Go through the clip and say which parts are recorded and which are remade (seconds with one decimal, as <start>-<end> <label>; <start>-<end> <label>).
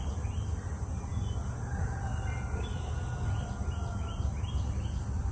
0.0-1.1 remade; 1.1-1.6 recorded; 1.6-2.1 remade; 2.1-3.3 recorded; 3.3-5.3 remade